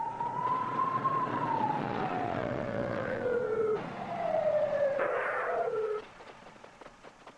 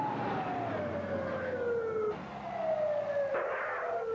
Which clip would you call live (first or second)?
second